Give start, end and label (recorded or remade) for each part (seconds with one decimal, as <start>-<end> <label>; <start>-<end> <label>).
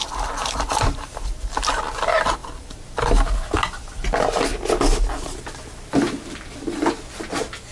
0.0-1.5 remade; 1.5-7.7 recorded